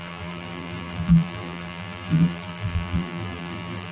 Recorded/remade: remade